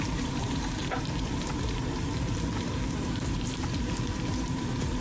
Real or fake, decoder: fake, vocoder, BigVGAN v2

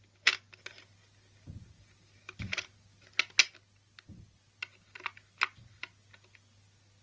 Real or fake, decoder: real